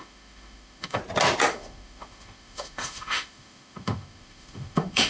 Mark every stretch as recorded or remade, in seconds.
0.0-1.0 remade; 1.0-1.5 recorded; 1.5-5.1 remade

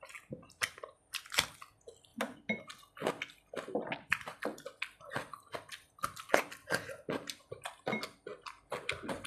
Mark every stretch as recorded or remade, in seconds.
0.0-9.3 recorded